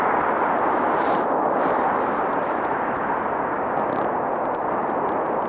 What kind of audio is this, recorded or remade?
recorded